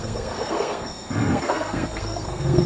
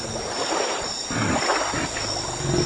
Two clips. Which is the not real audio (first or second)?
first